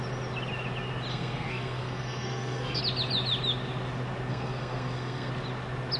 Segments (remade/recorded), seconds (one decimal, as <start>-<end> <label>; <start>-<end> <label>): 0.0-1.1 recorded; 1.1-2.8 remade; 2.8-4.3 recorded; 4.3-5.3 remade; 5.3-6.0 recorded